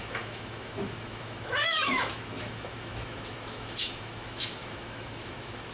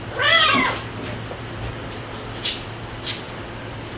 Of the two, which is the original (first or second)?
second